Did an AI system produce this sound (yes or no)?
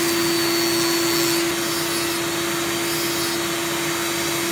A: no